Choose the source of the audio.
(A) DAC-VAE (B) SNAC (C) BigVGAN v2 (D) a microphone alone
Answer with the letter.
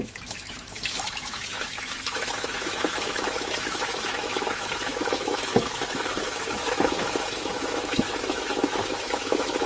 A